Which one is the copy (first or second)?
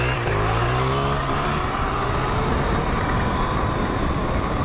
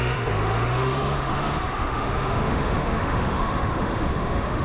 second